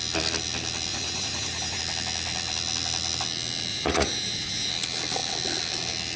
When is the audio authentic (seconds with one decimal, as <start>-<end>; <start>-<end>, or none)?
0.0-0.9; 1.8-3.7; 4.7-6.2